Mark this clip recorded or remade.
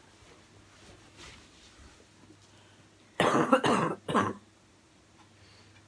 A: recorded